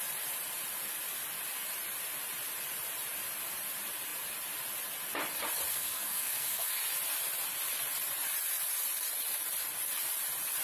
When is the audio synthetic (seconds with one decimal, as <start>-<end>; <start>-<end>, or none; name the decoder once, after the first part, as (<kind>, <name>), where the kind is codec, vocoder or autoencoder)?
5.7-6.7 (codec, SNAC)